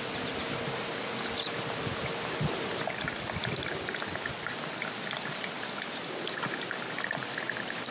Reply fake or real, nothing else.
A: real